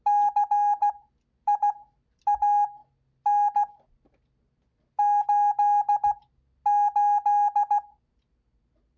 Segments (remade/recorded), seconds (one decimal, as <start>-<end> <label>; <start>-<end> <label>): 0.0-9.0 recorded